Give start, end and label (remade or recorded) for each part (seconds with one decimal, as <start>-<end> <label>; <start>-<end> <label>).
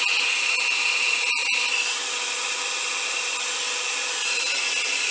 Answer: 0.0-5.1 recorded